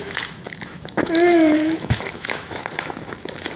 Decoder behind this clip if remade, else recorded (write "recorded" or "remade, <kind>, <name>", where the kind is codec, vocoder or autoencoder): remade, autoencoder, DAC-VAE